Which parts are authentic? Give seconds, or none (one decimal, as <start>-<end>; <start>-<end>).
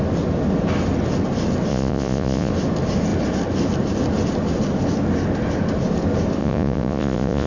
0.0-1.7; 2.5-6.4